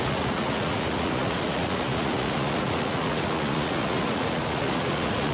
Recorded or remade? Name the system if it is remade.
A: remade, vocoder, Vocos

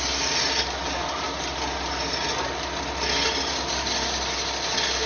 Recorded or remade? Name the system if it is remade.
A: recorded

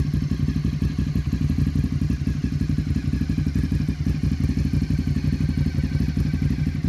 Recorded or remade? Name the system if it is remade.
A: recorded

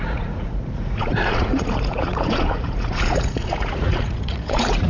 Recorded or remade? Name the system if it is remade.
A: remade, vocoder, Vocos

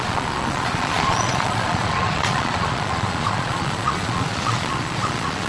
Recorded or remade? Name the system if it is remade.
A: remade, vocoder, Vocos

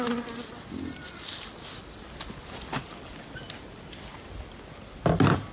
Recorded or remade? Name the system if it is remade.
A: recorded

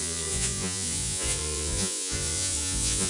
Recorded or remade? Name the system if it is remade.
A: remade, vocoder, Vocos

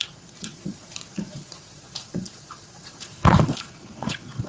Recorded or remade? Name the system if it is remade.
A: remade, vocoder, Vocos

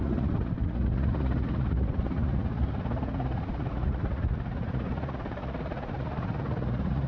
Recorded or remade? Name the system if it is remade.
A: remade, vocoder, Vocos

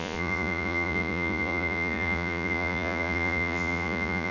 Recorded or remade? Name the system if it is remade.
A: remade, vocoder, Vocos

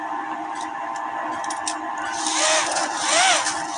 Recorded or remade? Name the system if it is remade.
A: recorded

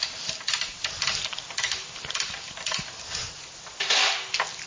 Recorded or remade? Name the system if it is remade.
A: recorded